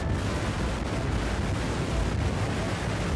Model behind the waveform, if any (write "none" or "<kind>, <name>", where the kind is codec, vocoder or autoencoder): none